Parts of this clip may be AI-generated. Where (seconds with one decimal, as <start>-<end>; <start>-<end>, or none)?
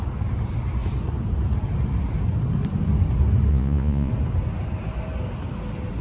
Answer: 3.5-4.1